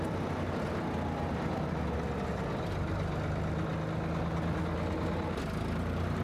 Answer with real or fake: real